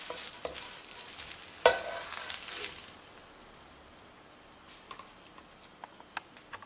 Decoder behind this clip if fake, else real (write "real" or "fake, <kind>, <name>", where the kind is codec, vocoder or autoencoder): real